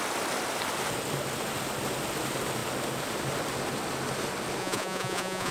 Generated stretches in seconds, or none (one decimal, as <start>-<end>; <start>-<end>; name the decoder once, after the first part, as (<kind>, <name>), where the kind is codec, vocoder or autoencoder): 4.6-5.5 (vocoder, Vocos)